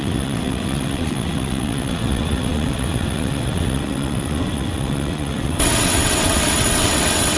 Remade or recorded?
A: remade